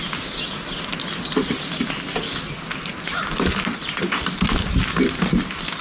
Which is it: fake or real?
real